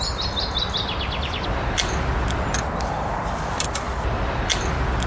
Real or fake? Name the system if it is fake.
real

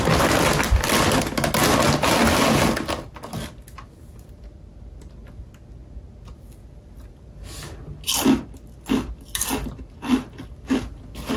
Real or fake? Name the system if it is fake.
real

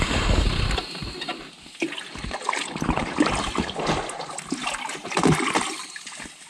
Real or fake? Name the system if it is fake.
real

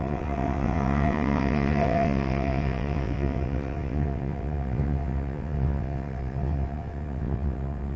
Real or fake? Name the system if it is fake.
fake, vocoder, WaveNeXt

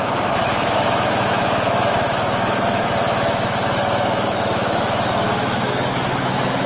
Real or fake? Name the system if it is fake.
fake, autoencoder, DAC-VAE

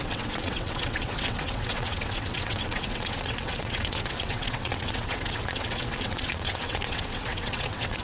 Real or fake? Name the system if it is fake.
fake, vocoder, WaveNeXt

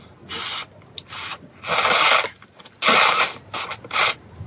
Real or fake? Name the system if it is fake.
real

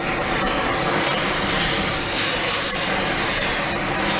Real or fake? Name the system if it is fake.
real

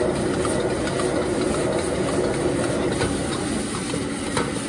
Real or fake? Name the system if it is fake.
real